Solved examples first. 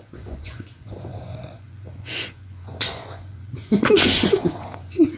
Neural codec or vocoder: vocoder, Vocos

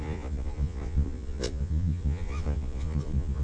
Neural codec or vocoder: vocoder, Vocos